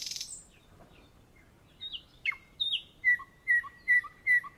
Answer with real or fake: fake